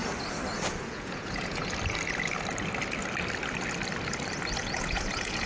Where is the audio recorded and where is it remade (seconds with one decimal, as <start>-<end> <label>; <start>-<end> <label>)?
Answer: 0.0-0.8 recorded; 0.8-1.6 remade; 1.6-4.6 recorded; 4.6-5.5 remade